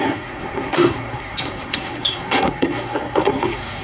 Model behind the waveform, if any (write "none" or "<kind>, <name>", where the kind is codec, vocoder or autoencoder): codec, SNAC